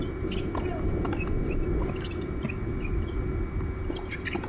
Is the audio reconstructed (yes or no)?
no